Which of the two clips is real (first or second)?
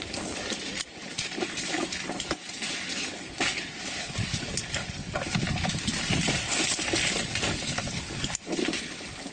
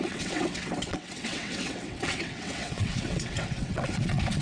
first